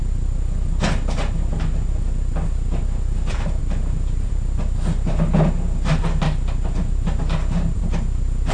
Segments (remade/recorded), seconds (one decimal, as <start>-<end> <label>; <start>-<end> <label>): 0.0-8.5 recorded